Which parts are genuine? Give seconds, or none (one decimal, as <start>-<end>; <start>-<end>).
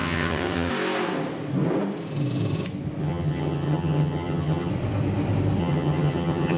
0.7-3.0; 4.7-5.6